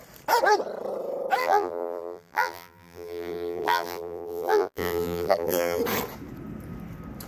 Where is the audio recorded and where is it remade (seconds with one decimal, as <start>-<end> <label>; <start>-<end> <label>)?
0.0-1.4 recorded; 1.4-5.8 remade; 5.8-7.3 recorded